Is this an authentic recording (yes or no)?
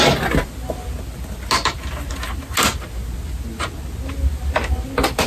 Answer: yes